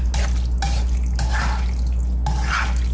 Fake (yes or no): no